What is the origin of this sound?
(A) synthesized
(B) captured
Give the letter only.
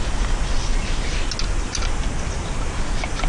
B